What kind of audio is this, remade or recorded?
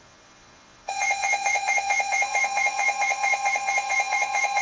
remade